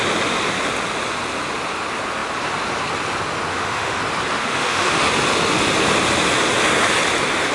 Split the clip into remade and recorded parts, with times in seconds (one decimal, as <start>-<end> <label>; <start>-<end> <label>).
0.0-3.5 recorded; 3.5-4.0 remade; 4.0-4.4 recorded; 4.4-5.1 remade; 5.1-7.5 recorded